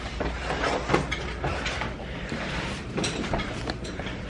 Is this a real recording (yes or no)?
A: no